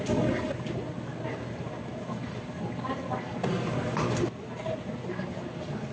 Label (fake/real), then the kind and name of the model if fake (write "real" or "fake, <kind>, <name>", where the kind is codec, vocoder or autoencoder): real